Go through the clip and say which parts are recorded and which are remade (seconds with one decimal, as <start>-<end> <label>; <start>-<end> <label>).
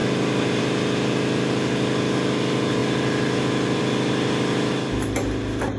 0.0-5.8 recorded